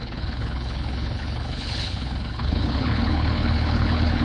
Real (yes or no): no